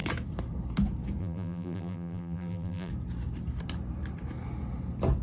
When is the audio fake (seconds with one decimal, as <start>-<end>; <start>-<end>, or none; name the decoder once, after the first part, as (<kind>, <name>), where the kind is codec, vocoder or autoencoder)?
1.2-2.9 (vocoder, BigVGAN v2)